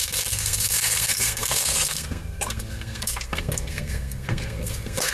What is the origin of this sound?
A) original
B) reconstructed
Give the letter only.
B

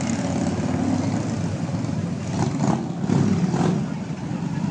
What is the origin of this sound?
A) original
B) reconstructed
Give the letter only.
A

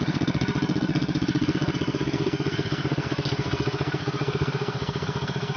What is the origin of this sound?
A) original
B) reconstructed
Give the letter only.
B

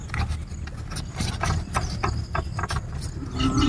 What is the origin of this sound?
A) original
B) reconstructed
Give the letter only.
A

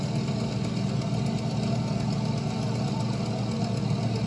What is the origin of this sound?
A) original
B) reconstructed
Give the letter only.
A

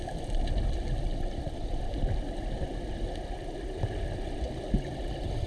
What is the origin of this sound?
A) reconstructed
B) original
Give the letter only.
B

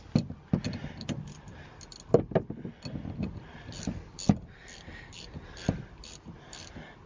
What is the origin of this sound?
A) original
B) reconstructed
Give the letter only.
A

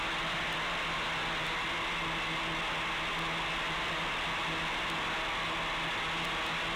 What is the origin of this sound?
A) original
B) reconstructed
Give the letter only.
A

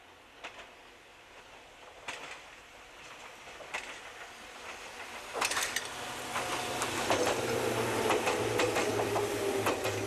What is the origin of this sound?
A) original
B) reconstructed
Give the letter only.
A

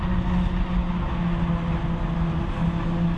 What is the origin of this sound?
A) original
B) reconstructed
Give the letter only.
A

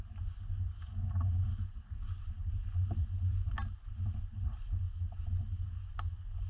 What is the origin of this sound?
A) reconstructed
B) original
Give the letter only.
B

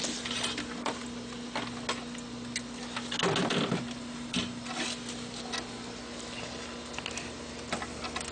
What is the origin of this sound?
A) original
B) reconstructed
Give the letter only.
A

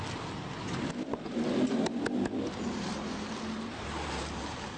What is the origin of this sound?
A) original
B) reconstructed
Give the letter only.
A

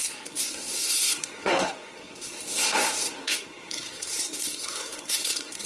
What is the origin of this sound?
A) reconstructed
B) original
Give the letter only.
A